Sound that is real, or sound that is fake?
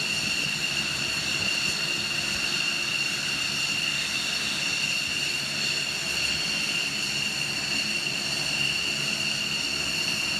real